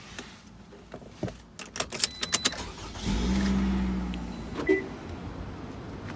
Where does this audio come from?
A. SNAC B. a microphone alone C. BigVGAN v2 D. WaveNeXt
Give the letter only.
B